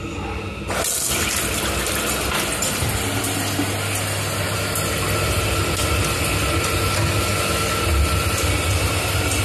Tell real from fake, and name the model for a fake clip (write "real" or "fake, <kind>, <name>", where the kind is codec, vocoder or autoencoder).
real